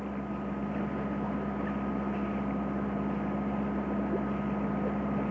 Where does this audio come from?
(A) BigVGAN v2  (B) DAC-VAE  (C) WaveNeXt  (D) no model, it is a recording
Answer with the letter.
D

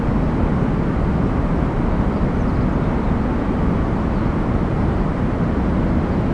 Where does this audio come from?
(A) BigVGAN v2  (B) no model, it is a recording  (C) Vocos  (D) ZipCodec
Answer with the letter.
B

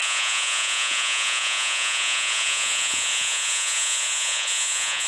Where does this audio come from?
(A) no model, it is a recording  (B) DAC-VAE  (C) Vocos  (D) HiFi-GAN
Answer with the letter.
C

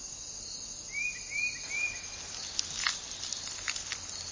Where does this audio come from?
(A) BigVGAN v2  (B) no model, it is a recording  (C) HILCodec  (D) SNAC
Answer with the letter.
B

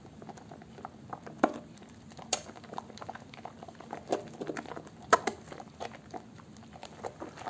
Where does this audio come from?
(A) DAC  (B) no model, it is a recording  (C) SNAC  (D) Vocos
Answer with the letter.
B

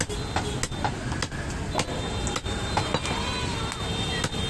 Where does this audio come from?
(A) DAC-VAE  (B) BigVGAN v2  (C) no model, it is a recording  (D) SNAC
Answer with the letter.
C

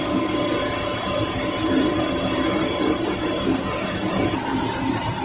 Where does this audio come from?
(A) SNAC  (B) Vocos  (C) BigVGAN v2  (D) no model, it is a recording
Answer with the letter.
D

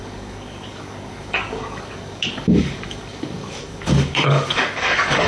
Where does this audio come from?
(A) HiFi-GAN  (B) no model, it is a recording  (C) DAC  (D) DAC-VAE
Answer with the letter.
C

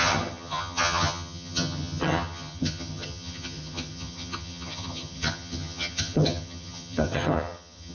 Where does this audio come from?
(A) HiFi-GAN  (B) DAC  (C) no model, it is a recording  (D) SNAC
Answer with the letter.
A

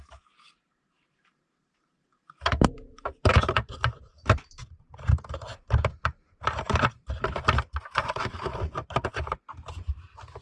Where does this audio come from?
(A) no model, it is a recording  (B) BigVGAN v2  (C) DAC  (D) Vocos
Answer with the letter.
B